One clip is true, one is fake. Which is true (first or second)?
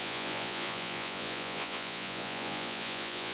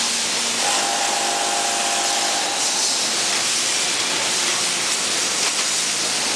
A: second